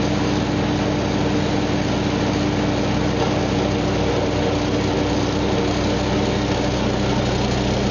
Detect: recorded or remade recorded